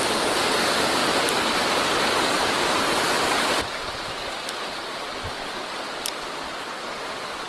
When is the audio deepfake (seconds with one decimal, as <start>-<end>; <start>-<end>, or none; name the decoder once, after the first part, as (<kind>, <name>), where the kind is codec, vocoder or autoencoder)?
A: 1.0-5.5 (vocoder, BigVGAN v2)